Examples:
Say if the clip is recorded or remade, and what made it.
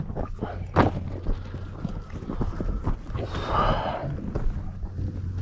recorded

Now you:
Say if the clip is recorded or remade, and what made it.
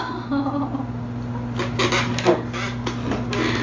recorded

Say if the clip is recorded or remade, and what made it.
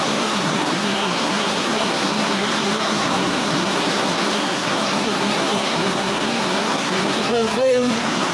remade, codec, SNAC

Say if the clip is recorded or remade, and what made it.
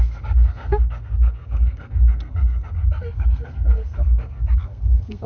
remade, codec, SNAC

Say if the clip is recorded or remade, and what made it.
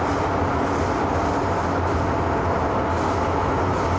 recorded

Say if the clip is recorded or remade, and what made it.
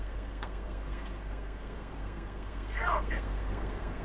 remade, codec, SNAC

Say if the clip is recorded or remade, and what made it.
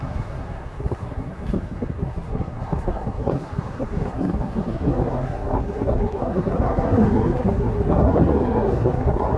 remade, codec, SNAC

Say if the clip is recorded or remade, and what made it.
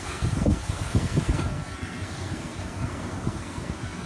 remade, codec, SNAC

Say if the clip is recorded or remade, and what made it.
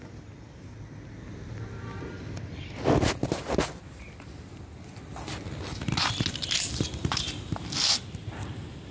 recorded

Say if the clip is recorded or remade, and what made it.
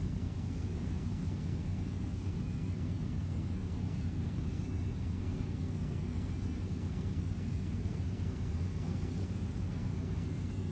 remade, codec, SNAC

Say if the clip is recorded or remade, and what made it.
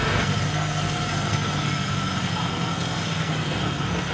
remade, codec, SNAC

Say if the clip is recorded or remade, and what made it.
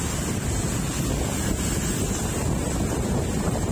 recorded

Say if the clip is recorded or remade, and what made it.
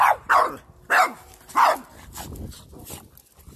recorded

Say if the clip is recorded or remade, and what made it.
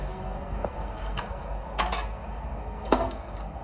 remade, codec, SNAC